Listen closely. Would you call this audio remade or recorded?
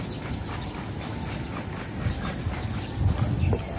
recorded